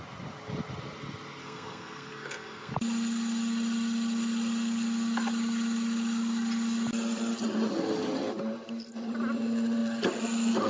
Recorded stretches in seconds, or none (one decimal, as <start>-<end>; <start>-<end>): 0.0-1.4; 2.7-10.7